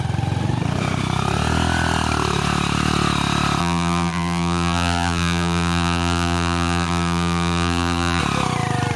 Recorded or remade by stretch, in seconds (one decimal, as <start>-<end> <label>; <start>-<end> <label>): 0.0-3.6 recorded; 3.6-8.2 remade; 8.2-9.0 recorded